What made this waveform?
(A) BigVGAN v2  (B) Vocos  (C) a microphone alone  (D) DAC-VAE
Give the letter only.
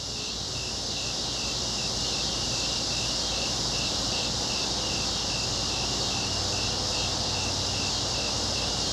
C